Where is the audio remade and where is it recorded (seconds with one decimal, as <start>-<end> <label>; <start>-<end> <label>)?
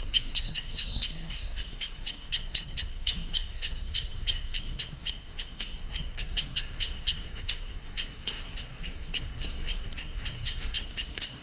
0.0-11.4 remade